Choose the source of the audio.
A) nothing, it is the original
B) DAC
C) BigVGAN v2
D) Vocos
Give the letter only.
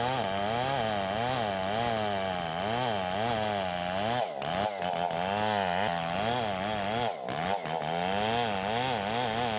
A